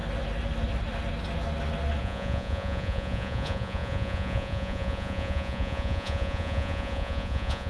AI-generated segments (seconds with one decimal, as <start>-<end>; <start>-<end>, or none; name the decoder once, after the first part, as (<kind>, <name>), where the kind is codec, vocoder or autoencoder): 2.0-7.7 (vocoder, Vocos)